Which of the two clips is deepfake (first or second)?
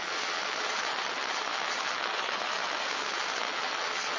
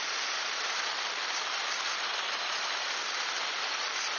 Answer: first